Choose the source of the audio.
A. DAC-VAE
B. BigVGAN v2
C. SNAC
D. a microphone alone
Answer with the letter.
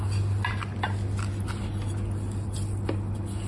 D